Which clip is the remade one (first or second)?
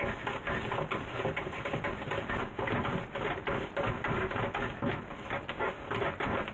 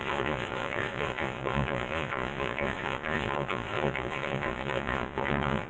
second